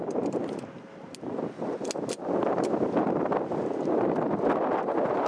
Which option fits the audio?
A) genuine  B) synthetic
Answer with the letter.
A